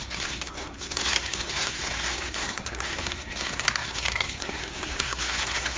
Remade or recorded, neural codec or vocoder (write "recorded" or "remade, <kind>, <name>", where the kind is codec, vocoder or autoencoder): remade, codec, SNAC